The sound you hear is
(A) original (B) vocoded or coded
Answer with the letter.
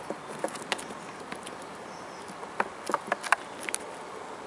A